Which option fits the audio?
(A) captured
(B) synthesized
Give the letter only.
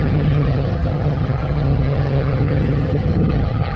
B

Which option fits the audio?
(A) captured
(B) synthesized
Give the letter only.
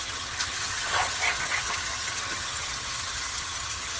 B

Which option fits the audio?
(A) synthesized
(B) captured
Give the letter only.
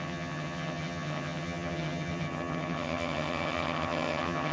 A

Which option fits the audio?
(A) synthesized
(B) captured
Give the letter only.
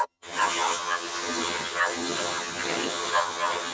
A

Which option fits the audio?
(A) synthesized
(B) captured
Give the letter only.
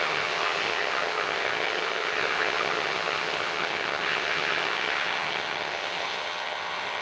A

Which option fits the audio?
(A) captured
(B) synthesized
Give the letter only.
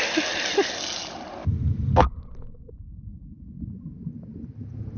A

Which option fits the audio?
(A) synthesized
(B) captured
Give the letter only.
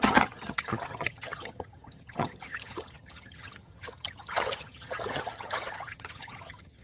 A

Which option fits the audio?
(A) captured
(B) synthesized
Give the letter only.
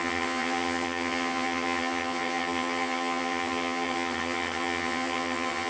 B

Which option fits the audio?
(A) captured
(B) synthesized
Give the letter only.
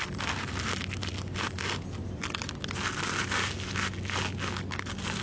A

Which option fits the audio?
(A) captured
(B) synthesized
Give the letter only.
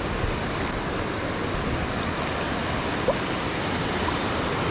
A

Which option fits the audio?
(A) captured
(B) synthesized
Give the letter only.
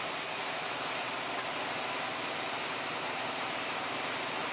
A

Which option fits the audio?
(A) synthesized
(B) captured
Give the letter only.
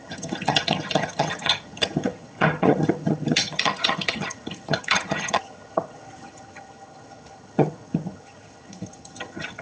A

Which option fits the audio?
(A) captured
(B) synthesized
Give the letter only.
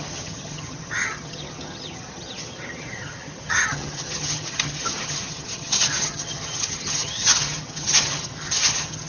B